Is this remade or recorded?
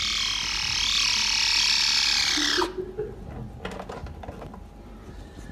recorded